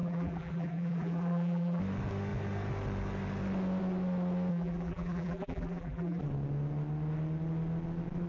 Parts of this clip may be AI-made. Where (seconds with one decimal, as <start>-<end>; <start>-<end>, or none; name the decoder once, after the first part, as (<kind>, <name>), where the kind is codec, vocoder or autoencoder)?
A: 0.0-1.8 (vocoder, BigVGAN v2); 4.5-6.2